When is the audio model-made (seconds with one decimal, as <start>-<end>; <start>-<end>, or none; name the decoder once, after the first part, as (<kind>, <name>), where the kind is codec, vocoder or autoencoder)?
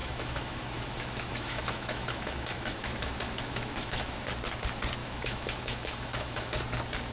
0.0-4.3 (autoencoder, DAC-VAE); 5.0-6.5